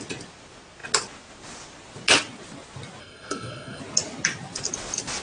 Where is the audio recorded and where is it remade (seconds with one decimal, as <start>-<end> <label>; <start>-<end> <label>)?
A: 0.0-3.0 recorded; 3.0-3.8 remade; 3.8-5.2 recorded